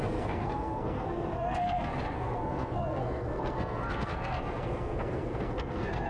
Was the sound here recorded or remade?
remade